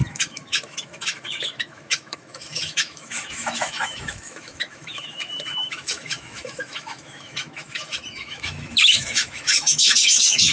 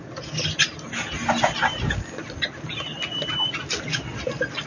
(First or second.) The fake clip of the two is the first